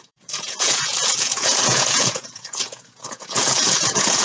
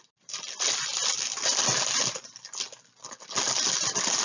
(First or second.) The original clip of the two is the second